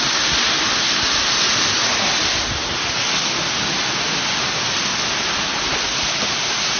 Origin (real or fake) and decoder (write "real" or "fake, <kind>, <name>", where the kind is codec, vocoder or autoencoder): real